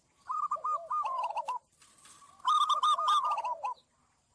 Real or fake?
real